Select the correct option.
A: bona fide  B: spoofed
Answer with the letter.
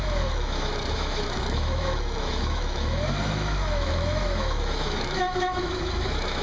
B